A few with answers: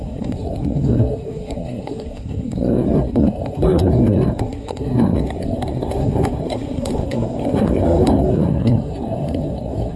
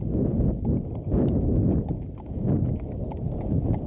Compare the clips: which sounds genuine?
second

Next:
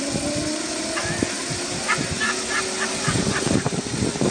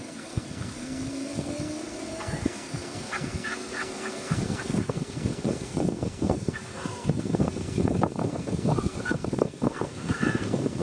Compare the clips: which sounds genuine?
first